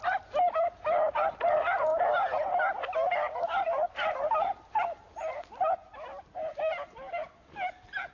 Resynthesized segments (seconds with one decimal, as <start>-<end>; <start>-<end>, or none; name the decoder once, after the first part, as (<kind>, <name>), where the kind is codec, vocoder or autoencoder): none